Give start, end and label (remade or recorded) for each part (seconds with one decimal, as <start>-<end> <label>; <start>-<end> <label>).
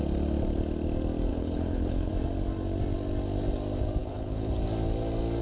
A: 0.0-1.3 recorded; 1.3-2.1 remade; 2.1-4.0 recorded; 4.0-4.5 remade; 4.5-5.4 recorded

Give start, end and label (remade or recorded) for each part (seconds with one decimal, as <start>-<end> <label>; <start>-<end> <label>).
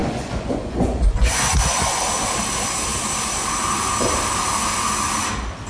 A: 0.0-2.0 remade; 2.0-5.7 recorded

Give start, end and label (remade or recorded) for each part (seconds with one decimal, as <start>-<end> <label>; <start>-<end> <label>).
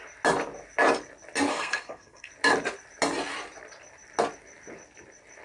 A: 0.0-1.5 recorded; 1.5-2.3 remade; 2.3-5.4 recorded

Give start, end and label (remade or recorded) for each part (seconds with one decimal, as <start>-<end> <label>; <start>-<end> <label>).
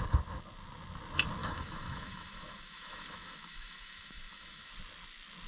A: 0.0-1.4 recorded; 1.4-4.7 remade; 4.7-5.5 recorded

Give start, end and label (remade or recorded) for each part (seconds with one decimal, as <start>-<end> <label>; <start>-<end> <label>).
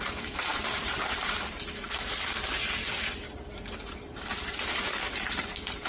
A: 0.0-5.9 remade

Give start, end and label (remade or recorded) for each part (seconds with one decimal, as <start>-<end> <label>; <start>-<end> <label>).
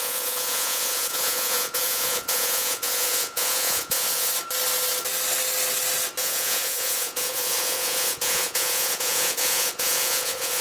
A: 0.0-4.3 remade; 4.3-6.2 recorded; 6.2-10.6 remade